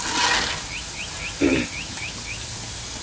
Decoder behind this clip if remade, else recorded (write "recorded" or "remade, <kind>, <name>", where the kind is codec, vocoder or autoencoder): recorded